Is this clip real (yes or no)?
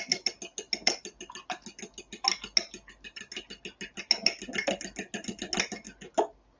yes